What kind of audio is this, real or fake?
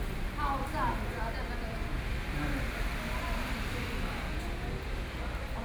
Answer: real